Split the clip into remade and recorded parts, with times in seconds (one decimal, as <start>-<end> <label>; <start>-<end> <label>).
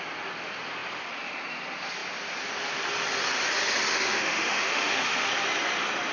0.0-3.9 recorded; 3.9-5.3 remade; 5.3-6.1 recorded